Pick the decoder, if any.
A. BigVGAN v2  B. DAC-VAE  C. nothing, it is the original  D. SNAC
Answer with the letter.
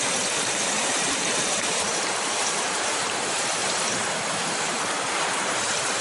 A